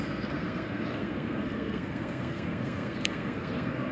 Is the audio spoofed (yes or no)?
yes